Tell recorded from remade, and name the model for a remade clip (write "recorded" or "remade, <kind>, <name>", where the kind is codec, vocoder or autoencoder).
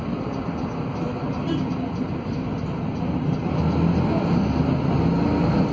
recorded